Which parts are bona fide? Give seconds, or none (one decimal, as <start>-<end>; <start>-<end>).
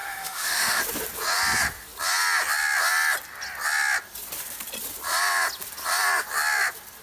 0.8-7.0